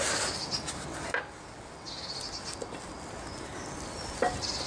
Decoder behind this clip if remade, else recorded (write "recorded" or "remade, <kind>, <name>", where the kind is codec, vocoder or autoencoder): recorded